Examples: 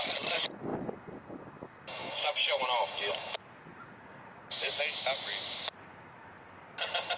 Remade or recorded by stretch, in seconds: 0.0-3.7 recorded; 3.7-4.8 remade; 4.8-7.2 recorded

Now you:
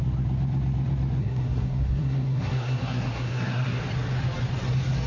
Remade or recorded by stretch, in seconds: 0.0-1.2 recorded; 1.2-3.8 remade; 3.8-5.1 recorded

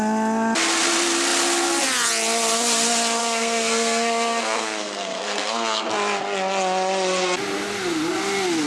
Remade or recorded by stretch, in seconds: 0.0-3.2 recorded; 3.2-5.9 remade; 5.9-8.7 recorded

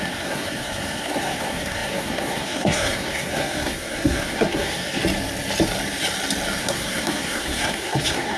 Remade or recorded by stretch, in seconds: 0.0-5.0 remade; 5.0-6.6 recorded; 6.6-8.4 remade